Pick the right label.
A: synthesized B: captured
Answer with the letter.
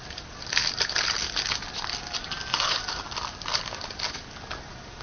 B